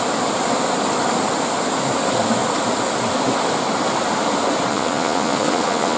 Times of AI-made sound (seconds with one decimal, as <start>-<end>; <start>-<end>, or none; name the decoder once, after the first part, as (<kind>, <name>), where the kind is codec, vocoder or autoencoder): 4.7-6.0 (vocoder, Vocos)